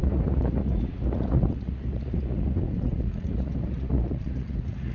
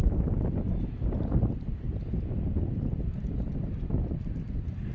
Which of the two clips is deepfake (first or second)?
first